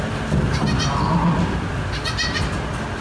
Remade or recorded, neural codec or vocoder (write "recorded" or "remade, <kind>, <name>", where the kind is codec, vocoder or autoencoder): recorded